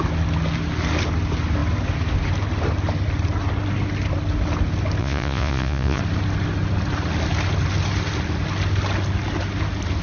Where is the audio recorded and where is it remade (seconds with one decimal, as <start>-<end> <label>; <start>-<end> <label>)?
0.0-5.0 recorded; 5.0-6.0 remade; 6.0-10.0 recorded

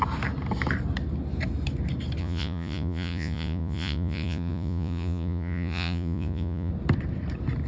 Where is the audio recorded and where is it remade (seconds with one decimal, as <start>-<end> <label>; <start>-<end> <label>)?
0.0-2.2 recorded; 2.2-6.7 remade; 6.7-7.7 recorded